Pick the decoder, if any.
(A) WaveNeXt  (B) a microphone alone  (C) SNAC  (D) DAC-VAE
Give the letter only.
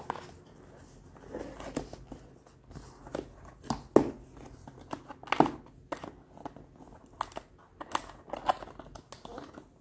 B